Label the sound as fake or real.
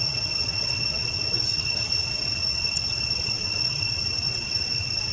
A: fake